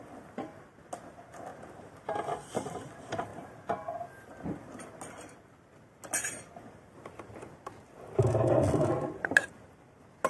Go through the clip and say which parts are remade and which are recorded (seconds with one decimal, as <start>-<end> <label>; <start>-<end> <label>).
0.0-10.3 recorded